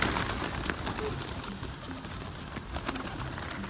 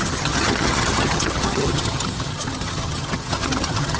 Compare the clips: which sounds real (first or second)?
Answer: first